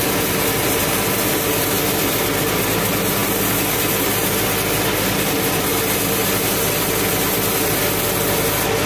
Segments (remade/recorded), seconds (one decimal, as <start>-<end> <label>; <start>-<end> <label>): 0.0-8.9 recorded